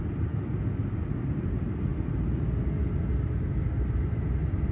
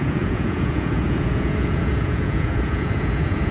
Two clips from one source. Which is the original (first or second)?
first